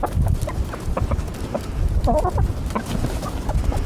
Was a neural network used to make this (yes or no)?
no